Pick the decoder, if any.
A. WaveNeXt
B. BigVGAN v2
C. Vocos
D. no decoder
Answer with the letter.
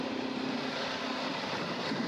D